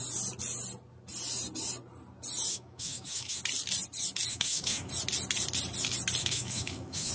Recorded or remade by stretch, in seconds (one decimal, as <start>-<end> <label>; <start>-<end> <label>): 0.0-2.5 recorded; 2.5-3.4 remade; 3.4-4.3 recorded; 4.3-4.9 remade; 4.9-6.2 recorded; 6.2-7.1 remade